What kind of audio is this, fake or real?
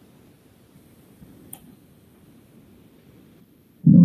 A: fake